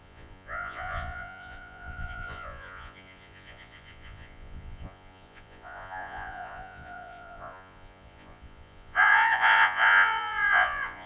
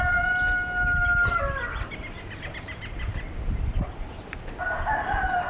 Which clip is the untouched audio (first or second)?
second